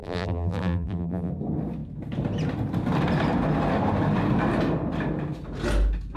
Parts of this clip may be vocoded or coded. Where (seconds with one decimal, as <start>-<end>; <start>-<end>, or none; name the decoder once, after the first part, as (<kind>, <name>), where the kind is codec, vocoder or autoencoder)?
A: 0.0-1.3 (vocoder, BigVGAN v2)

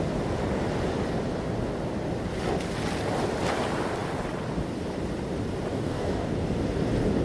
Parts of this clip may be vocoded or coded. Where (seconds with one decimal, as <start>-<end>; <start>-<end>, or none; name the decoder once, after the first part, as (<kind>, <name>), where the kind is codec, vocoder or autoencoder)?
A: 5.7-6.3 (codec, DAC)

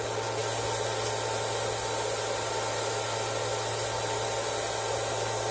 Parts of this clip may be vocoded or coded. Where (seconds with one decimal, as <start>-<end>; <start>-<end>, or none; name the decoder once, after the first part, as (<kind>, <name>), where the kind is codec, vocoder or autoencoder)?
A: none

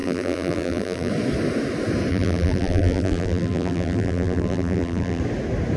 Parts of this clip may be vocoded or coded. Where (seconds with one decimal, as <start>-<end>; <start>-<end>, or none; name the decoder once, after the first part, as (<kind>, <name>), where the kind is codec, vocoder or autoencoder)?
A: 0.0-1.1 (vocoder, BigVGAN v2); 2.1-5.2

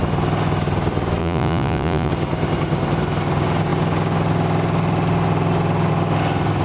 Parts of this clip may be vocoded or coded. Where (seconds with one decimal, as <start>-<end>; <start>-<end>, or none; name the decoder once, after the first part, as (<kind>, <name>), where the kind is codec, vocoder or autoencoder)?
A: 1.2-2.1 (vocoder, Vocos)

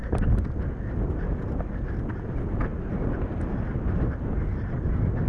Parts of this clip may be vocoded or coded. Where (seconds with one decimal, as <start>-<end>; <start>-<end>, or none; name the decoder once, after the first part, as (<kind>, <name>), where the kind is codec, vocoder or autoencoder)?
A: none